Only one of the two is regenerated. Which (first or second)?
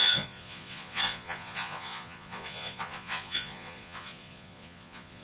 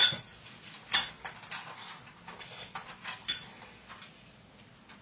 first